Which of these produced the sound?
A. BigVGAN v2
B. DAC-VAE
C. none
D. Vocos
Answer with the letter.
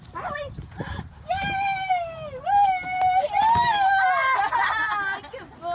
C